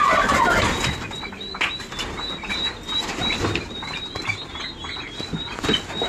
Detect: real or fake real